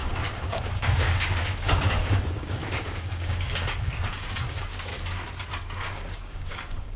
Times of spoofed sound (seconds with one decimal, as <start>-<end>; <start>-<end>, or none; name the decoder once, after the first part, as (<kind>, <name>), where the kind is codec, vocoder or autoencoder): 0.0-4.9 (codec, DAC); 5.6-7.0